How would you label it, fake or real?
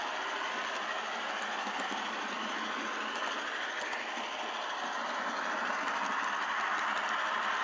real